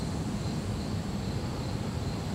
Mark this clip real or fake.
real